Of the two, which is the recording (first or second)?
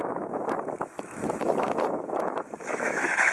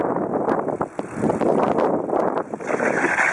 second